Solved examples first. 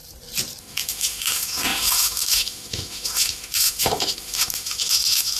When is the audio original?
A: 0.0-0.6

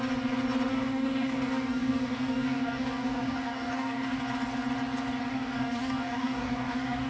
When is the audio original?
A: 0.0-0.7; 4.2-5.3

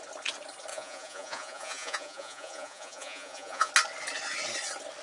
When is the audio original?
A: 0.0-0.7; 3.7-5.0

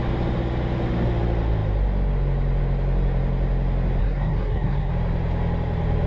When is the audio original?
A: 0.0-4.0; 4.9-6.1